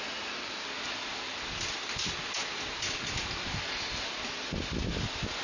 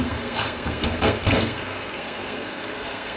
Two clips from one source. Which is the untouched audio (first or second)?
first